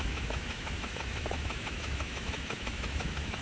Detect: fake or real fake